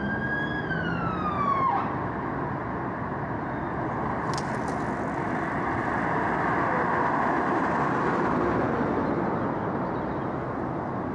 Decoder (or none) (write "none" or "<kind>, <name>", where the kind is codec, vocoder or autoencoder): none